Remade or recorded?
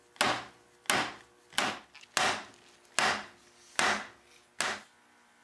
recorded